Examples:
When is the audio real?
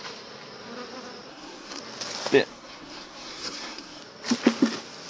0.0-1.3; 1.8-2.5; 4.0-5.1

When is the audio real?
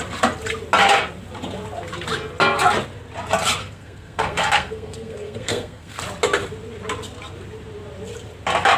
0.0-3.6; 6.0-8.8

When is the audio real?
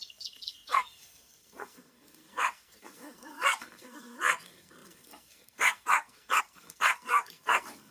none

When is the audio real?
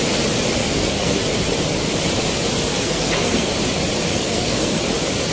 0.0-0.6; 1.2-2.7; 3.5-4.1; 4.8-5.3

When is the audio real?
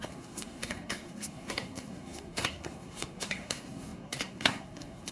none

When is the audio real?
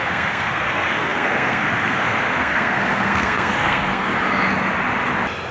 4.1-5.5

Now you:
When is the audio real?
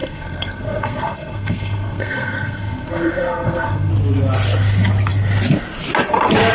3.9-6.5